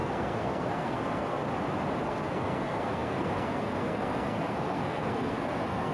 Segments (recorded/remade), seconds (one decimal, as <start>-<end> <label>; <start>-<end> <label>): 0.0-1.4 remade; 1.4-2.0 recorded; 2.0-5.9 remade